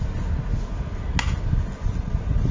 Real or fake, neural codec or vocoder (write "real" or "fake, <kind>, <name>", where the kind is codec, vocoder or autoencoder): real